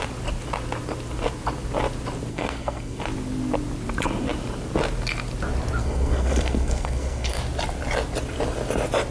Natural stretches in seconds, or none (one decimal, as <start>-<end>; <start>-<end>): 0.0-2.3; 3.0-5.8; 7.4-9.1